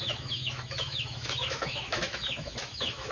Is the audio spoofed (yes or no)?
yes